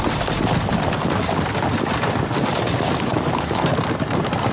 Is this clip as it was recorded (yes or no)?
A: yes